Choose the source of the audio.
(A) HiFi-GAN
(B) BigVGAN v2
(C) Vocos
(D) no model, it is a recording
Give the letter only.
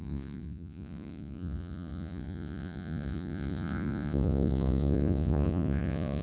C